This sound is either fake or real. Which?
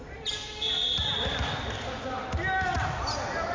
real